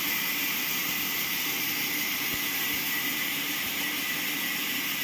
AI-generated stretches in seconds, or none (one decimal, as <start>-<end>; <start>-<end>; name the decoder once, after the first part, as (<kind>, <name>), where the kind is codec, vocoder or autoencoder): 0.8-3.7 (vocoder, BigVGAN v2)